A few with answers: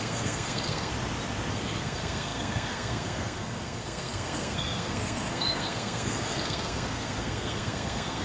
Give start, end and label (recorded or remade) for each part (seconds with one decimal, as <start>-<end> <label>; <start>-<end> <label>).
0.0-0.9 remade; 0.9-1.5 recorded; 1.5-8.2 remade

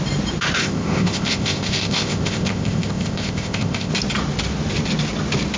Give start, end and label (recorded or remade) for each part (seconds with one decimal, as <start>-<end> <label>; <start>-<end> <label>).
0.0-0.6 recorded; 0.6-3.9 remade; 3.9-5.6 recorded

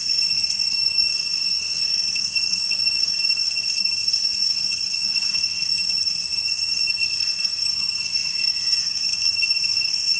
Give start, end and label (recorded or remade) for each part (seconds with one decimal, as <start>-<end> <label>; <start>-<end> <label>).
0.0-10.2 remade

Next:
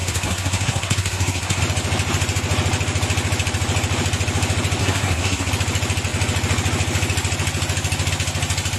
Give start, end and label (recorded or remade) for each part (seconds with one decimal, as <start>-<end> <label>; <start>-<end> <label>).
0.0-1.6 remade; 1.6-4.8 recorded; 4.8-5.5 remade; 5.5-8.8 recorded

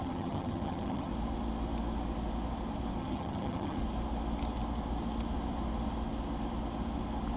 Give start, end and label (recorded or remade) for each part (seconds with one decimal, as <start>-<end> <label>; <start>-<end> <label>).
0.0-1.1 remade; 1.1-3.0 recorded; 3.0-3.8 remade; 3.8-7.4 recorded